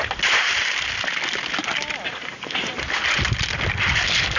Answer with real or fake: real